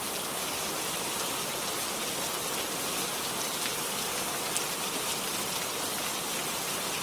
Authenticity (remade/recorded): recorded